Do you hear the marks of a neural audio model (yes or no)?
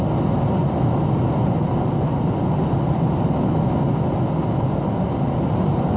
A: no